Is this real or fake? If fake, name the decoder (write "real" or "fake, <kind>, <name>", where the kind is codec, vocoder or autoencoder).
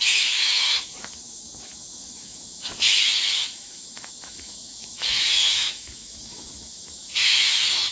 fake, autoencoder, DAC-VAE